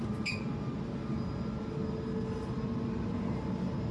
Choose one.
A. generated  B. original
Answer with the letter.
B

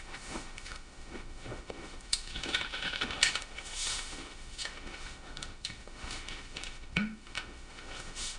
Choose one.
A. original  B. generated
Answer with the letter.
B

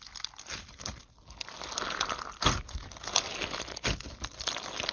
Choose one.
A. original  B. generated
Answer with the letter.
A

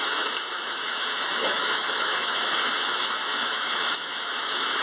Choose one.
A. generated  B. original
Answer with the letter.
A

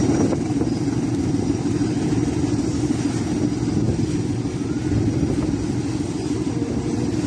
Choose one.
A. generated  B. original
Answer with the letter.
B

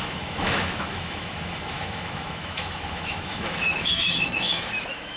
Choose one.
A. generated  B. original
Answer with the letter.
A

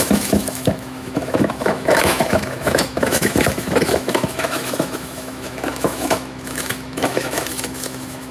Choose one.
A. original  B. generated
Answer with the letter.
B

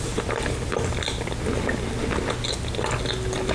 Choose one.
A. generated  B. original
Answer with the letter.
B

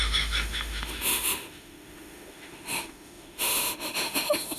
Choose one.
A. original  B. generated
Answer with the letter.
B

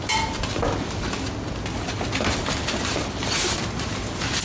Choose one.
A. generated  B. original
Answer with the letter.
B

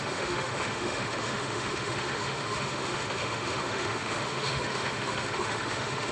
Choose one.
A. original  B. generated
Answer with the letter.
B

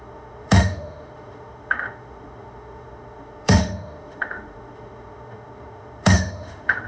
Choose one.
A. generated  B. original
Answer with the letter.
A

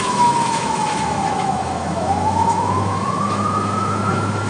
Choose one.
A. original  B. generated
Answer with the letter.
B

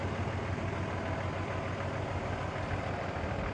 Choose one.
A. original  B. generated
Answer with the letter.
A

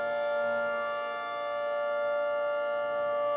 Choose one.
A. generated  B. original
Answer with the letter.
B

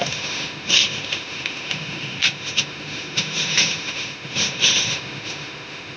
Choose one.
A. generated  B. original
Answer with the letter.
A